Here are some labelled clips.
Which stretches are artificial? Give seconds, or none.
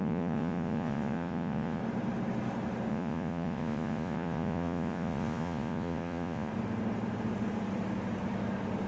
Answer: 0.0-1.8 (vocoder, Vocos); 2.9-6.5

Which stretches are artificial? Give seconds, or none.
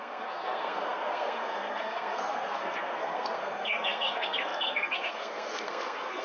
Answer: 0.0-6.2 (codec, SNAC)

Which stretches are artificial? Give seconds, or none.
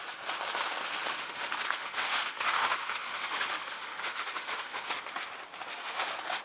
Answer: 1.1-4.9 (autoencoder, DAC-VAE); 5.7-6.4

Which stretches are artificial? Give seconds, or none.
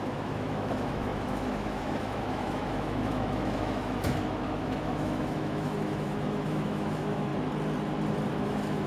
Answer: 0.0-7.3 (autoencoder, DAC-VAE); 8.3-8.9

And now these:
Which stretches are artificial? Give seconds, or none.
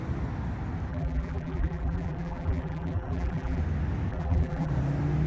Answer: 0.9-3.6 (vocoder, BigVGAN v2); 4.1-4.7